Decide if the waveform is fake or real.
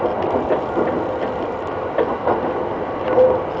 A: real